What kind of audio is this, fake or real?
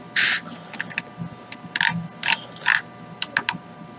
real